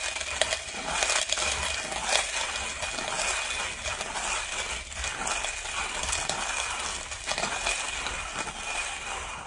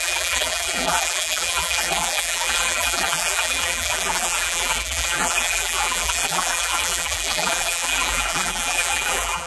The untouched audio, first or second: first